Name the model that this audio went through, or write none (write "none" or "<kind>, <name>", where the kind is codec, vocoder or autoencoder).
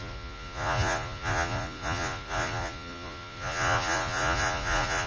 vocoder, Vocos